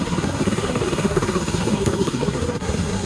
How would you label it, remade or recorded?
remade